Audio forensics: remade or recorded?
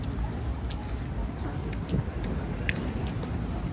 recorded